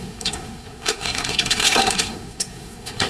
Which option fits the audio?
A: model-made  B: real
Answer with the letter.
A